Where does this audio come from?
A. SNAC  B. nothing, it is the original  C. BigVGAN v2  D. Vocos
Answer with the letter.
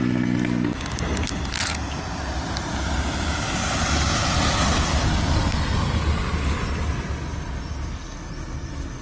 B